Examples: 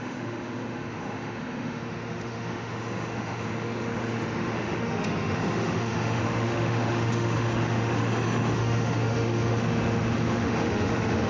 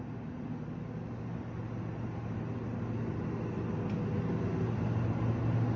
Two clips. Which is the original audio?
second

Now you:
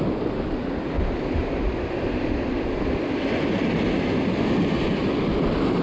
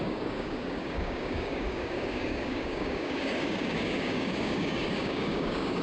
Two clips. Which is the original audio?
first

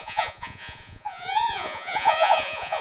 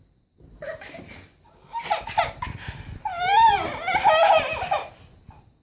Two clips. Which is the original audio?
second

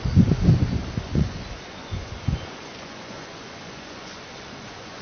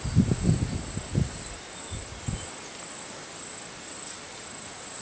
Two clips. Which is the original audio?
second